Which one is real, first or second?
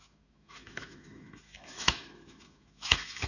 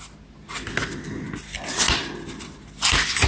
second